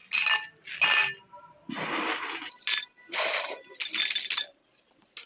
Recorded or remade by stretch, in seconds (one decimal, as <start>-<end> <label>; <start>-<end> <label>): 0.0-5.3 recorded